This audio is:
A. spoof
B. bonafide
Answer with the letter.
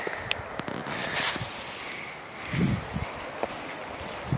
B